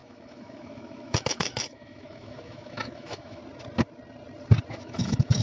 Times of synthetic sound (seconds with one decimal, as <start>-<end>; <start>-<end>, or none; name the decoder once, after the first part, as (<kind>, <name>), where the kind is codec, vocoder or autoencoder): 0.0-3.4 (autoencoder, DAC-VAE); 4.7-5.4